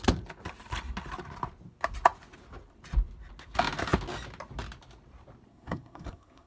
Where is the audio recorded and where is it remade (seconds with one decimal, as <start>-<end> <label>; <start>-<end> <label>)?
0.0-5.5 recorded; 5.5-6.5 remade